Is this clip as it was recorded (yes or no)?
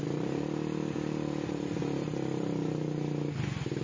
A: yes